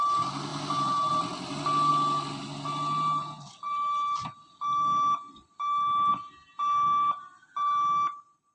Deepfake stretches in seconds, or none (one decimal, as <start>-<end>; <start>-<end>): 0.5-1.1

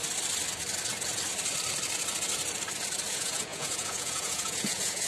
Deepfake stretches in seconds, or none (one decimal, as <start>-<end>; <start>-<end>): 3.1-5.1

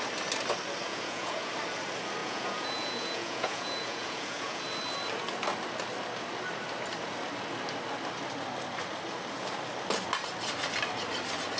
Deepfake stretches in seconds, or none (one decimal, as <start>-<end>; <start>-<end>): 0.9-1.5; 2.2-4.6